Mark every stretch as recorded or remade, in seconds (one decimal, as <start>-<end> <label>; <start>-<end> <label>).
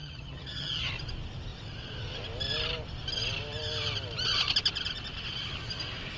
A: 0.0-0.9 remade; 0.9-6.2 recorded